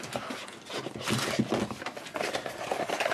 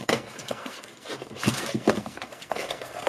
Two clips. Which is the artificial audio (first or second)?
second